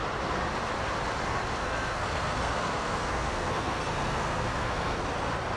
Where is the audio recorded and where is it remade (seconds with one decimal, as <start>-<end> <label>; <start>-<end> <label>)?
0.0-1.6 recorded; 1.6-5.0 remade; 5.0-5.6 recorded